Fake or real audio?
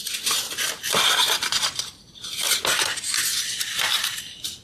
real